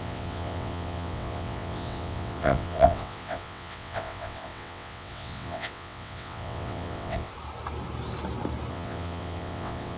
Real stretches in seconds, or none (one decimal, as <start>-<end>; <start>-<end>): 7.3-8.7